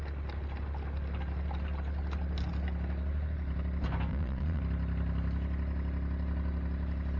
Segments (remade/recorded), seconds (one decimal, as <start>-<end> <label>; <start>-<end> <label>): 0.0-4.1 recorded; 4.1-4.6 remade; 4.6-7.2 recorded